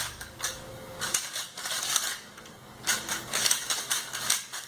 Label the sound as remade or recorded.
remade